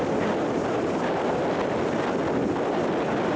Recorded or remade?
recorded